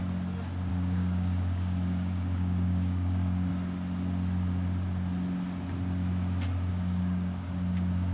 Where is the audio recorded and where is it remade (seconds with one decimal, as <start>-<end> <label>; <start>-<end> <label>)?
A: 0.0-0.7 recorded; 0.7-3.5 remade; 3.5-6.7 recorded; 6.7-7.5 remade; 7.5-8.1 recorded